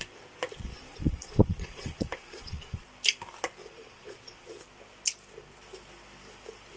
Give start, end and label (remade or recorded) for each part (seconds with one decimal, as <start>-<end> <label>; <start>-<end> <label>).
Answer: 0.0-0.6 recorded; 0.6-2.8 remade; 2.8-3.6 recorded; 3.6-4.6 remade; 4.6-6.8 recorded